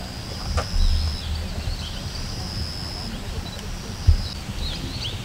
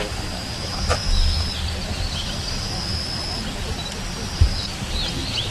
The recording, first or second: first